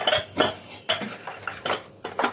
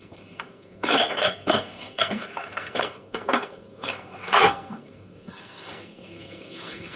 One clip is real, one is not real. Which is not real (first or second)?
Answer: second